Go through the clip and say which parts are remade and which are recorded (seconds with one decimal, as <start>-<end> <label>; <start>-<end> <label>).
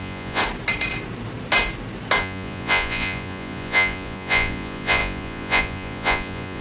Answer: 0.0-0.4 remade; 0.4-2.2 recorded; 2.2-6.6 remade